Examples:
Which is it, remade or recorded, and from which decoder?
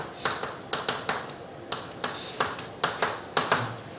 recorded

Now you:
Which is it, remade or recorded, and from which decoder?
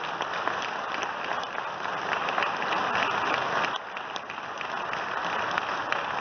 recorded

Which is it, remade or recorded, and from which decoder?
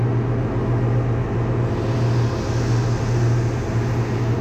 recorded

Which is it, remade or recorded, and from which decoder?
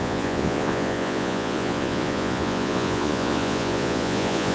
remade, vocoder, Vocos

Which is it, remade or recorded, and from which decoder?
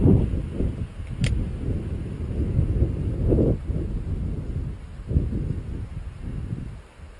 recorded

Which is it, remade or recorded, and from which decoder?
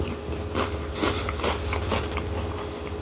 recorded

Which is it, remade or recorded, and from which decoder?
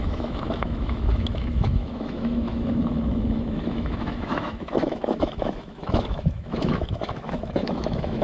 remade, autoencoder, DAC-VAE